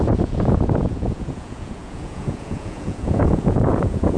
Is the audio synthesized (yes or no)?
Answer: yes